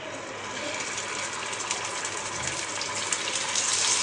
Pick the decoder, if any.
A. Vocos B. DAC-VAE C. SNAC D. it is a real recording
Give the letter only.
D